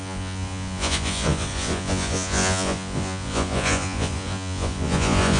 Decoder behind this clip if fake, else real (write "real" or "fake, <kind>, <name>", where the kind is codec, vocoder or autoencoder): fake, vocoder, Vocos